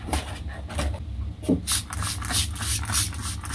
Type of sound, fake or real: real